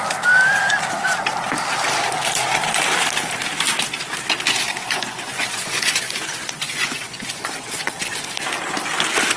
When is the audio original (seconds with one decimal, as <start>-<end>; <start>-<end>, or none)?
0.0-4.8; 8.3-9.4